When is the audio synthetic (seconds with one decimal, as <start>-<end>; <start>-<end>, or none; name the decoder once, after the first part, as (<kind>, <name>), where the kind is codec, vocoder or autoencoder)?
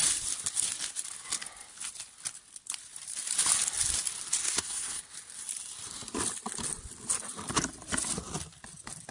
4.4-5.0 (codec, SNAC)